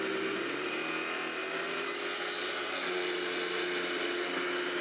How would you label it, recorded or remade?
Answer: recorded